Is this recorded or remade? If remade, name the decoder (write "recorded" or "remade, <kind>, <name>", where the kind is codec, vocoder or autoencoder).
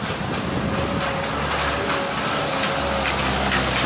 recorded